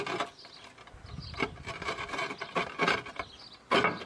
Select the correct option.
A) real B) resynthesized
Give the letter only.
A